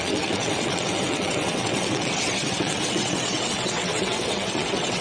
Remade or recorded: remade